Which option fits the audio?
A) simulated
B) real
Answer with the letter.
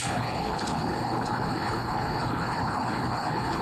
A